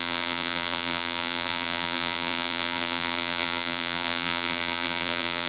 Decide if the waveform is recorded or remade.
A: remade